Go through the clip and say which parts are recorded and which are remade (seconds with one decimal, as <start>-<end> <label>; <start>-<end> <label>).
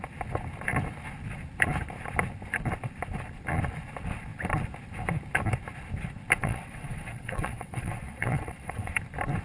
0.0-6.4 recorded; 6.4-8.9 remade; 8.9-9.4 recorded